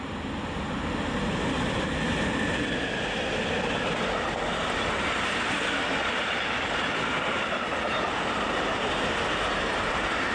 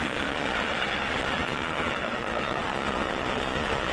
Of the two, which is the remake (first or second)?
second